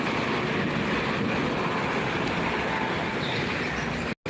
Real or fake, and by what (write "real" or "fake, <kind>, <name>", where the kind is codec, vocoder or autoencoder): real